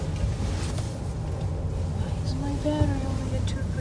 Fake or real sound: real